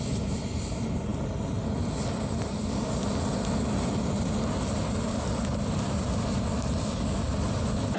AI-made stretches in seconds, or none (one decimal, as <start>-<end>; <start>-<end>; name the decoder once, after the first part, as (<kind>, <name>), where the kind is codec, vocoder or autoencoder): none

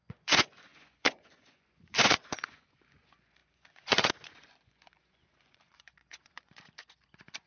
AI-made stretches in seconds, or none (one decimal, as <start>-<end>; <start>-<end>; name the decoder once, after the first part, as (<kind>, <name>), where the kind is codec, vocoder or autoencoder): 0.0-7.5 (vocoder, Vocos)

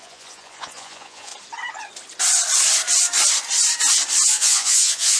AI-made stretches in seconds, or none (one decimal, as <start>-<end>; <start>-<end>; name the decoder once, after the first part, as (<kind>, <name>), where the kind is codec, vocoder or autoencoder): 0.0-1.3 (vocoder, Vocos); 4.3-5.2